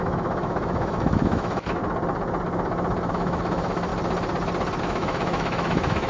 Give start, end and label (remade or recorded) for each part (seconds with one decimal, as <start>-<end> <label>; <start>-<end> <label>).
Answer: 0.0-1.8 remade; 1.8-3.1 recorded; 3.1-3.9 remade; 3.9-4.8 recorded; 4.8-6.1 remade